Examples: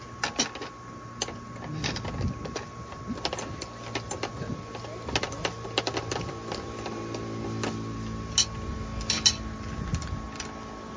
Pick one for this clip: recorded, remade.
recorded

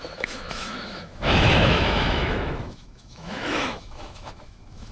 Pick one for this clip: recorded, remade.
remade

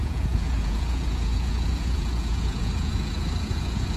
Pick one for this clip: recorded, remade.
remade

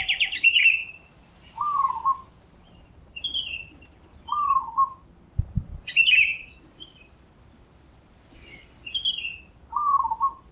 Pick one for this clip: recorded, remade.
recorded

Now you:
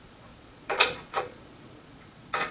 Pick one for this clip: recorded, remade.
remade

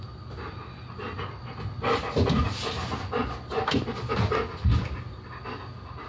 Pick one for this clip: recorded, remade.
recorded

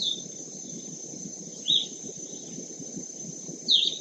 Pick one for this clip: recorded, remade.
recorded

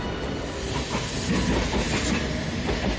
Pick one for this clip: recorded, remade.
recorded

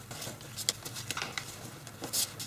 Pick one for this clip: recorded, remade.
recorded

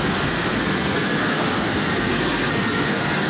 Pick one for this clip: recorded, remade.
remade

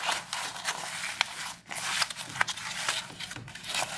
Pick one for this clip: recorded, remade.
recorded